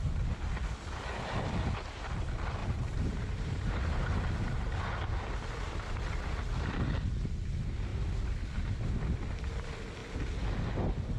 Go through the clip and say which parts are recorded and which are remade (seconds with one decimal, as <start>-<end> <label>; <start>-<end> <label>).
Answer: 0.0-2.6 recorded; 2.6-4.7 remade; 4.7-11.2 recorded